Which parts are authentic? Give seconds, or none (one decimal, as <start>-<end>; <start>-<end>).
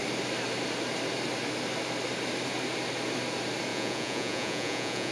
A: 0.0-3.7